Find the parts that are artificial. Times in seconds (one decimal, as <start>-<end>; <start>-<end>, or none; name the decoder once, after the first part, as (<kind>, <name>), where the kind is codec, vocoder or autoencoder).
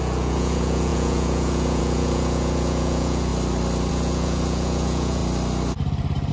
0.0-3.3 (vocoder, Vocos); 3.9-5.2